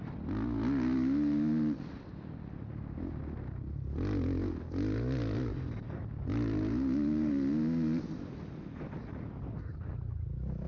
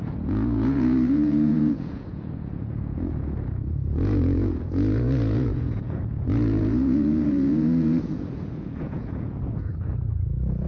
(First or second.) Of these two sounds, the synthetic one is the second